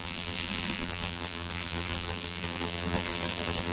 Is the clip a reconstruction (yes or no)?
yes